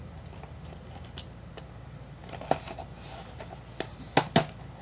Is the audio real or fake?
real